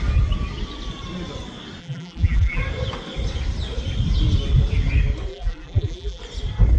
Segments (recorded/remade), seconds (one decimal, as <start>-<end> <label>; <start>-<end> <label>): 0.0-1.8 recorded; 1.8-2.6 remade; 2.6-5.3 recorded; 5.3-6.2 remade; 6.2-6.8 recorded